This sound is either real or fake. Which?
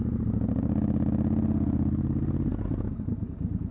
real